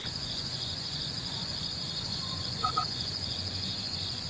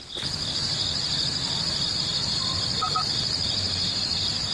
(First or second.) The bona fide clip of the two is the second